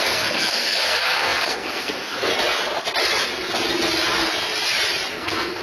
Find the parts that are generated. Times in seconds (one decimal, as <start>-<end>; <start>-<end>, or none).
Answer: 0.0-2.3; 5.1-5.6